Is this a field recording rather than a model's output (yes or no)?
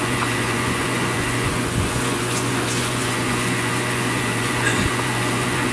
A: no